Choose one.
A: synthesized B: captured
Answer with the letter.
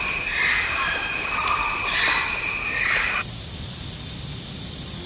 B